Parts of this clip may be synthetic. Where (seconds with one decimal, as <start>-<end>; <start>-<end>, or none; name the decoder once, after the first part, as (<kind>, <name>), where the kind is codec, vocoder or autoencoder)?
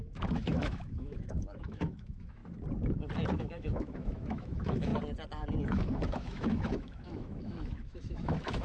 0.0-2.4 (autoencoder, DAC-VAE); 3.4-4.9; 5.6-8.6